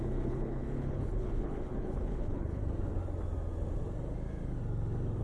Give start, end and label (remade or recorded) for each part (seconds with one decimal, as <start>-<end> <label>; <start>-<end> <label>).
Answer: 0.0-2.6 remade; 2.6-5.2 recorded

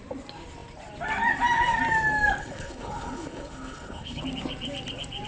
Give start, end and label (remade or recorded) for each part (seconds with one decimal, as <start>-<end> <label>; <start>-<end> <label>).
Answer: 0.0-2.4 recorded; 2.4-4.2 remade; 4.2-5.3 recorded